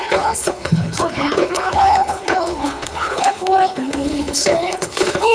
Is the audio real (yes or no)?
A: no